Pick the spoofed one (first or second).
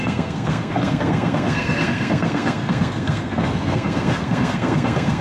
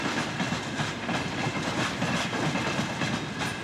first